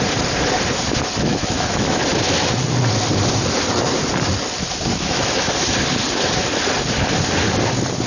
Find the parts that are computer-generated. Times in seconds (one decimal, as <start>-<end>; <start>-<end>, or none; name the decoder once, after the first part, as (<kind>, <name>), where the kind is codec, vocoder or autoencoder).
1.3-2.0 (autoencoder, DAC-VAE); 4.9-5.5